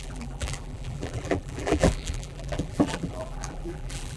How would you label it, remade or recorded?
remade